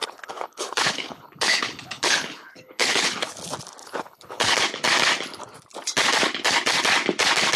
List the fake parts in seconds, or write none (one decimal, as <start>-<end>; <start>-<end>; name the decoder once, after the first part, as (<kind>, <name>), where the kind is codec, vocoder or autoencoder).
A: 0.0-3.3 (codec, HILCodec); 3.8-4.6